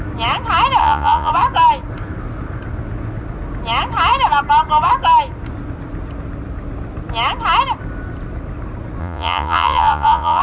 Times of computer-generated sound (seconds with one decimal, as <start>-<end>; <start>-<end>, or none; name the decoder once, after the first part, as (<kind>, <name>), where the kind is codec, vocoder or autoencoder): 0.8-1.3 (vocoder, Vocos); 9.0-10.4